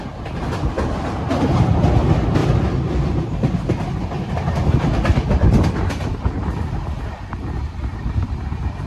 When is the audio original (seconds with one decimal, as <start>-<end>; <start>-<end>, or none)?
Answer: 0.0-7.9